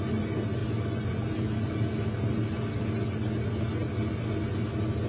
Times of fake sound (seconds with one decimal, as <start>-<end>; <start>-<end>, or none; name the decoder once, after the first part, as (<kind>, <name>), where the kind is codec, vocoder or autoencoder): none